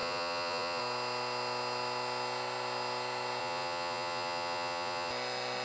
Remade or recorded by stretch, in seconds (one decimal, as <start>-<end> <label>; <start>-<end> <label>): 0.0-0.8 remade; 0.8-3.4 recorded; 3.4-5.1 remade; 5.1-5.6 recorded